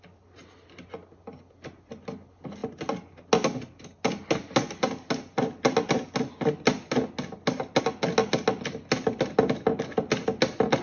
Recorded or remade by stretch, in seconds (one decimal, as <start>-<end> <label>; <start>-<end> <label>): 0.0-10.8 recorded